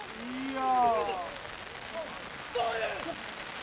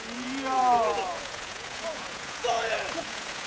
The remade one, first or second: second